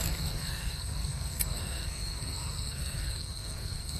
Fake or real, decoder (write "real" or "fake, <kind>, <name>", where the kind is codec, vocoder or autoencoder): fake, codec, SNAC